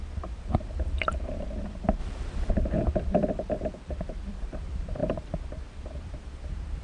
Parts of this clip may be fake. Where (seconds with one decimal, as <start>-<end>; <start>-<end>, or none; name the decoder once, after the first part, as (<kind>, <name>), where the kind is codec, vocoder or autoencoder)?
0.0-2.0 (vocoder, BigVGAN v2); 2.5-3.2; 3.9-6.8